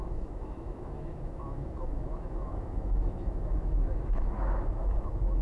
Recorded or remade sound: remade